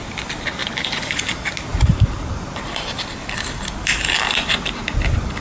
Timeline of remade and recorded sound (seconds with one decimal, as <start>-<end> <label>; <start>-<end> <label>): 0.0-0.6 recorded; 0.6-1.2 remade; 1.2-1.7 recorded; 1.7-4.5 remade; 4.5-5.4 recorded